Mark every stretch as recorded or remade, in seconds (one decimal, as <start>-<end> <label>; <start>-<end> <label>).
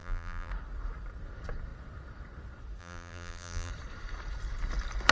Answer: 0.0-0.5 remade; 0.5-2.8 recorded; 2.8-3.7 remade; 3.7-5.1 recorded